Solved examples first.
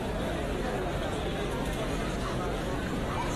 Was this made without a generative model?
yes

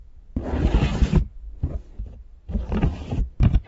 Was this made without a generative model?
yes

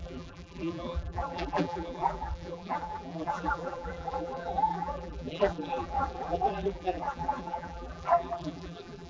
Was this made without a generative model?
no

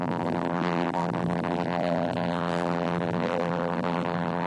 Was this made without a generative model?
no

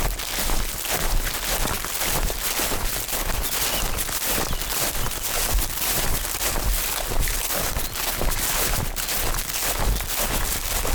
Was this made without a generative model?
yes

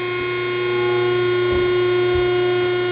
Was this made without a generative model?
yes